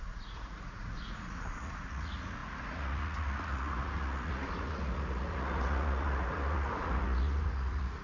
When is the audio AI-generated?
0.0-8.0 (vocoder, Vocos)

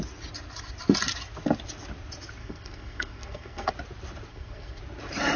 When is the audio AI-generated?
2.4-3.7 (codec, SNAC); 4.3-4.8

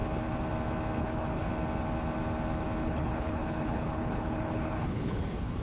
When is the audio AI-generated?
1.0-1.5 (codec, HILCodec); 2.8-5.6